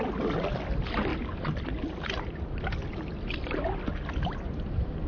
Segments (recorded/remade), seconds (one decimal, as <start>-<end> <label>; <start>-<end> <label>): 0.0-1.1 remade; 1.1-4.2 recorded; 4.2-5.1 remade